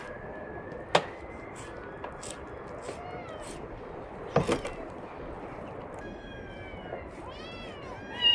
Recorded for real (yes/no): yes